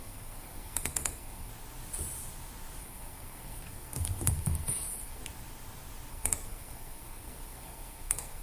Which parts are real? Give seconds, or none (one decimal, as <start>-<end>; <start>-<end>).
1.5-2.8; 5.2-6.1